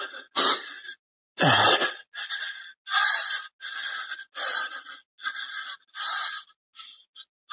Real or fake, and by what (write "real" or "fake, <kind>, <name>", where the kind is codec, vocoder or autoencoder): real